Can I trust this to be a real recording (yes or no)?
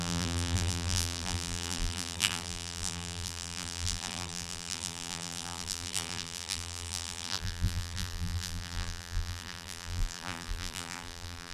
no